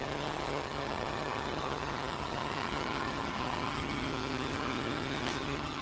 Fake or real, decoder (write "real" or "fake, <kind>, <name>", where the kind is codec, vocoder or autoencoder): fake, vocoder, HiFi-GAN